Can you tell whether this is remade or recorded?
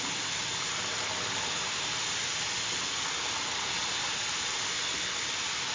recorded